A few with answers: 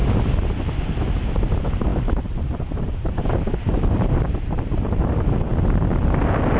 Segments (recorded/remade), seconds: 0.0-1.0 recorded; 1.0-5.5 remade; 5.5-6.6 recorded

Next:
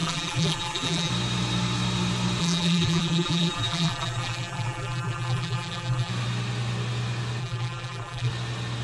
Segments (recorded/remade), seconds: 0.0-1.1 remade; 1.1-2.4 recorded; 2.4-6.1 remade; 6.1-7.4 recorded; 7.4-8.3 remade; 8.3-8.8 recorded

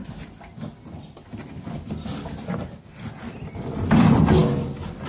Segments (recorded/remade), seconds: 0.0-5.1 recorded

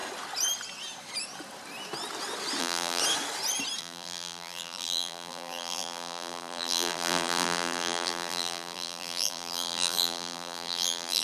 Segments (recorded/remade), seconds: 0.0-2.6 recorded; 2.6-3.0 remade; 3.0-3.8 recorded; 3.8-11.2 remade

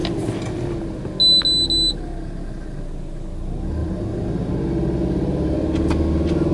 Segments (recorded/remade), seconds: 0.0-3.8 recorded; 3.8-4.5 remade; 4.5-6.5 recorded